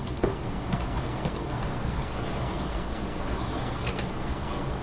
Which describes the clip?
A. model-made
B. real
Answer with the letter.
A